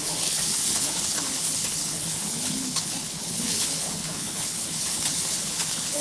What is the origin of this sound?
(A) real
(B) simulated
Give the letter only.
B